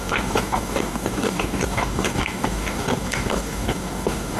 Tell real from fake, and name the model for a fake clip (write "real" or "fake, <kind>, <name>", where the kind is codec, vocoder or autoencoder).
fake, codec, DAC